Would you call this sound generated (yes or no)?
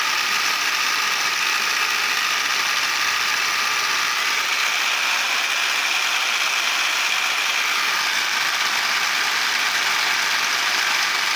no